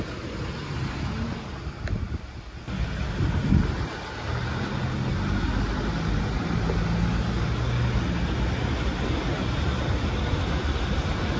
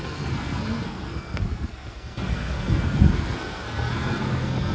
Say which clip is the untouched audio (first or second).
first